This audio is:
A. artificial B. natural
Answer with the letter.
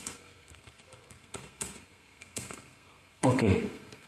A